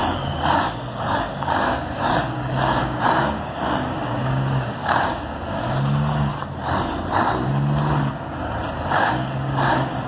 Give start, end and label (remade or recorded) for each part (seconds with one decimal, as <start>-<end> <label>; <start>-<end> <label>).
0.0-6.3 remade; 6.3-9.1 recorded; 9.1-10.1 remade